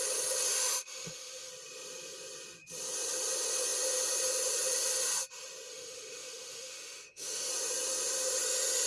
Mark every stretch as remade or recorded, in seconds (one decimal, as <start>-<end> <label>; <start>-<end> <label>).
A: 0.0-0.5 recorded; 0.5-1.5 remade; 1.5-5.7 recorded; 5.7-7.5 remade; 7.5-8.9 recorded